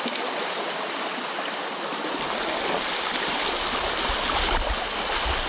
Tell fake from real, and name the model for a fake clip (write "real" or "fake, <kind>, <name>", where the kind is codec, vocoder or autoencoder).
real